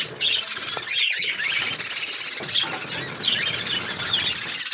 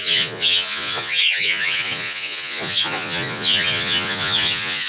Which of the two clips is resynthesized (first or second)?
second